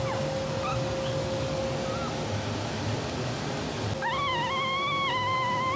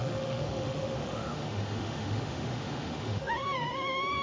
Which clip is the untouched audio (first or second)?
first